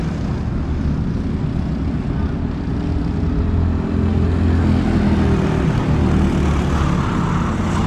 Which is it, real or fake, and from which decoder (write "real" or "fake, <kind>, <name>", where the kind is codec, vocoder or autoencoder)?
real